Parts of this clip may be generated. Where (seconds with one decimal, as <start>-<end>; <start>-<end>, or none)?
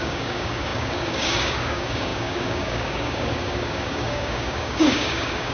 0.0-5.5